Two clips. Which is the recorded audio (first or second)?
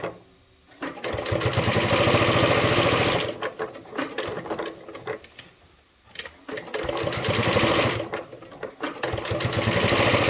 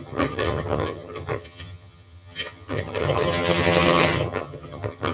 first